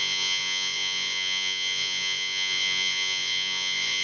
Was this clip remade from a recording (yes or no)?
yes